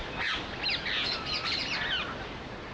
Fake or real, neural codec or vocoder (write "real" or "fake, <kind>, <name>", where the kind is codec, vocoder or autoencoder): real